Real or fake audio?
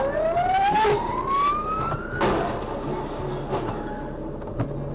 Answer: real